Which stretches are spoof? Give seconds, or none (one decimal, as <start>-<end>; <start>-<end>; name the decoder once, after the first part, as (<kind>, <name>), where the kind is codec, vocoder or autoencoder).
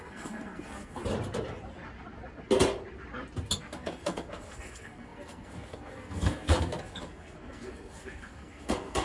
0.0-1.0 (codec, SNAC); 3.6-9.0